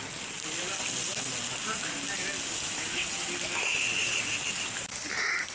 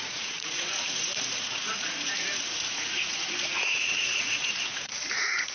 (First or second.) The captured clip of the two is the first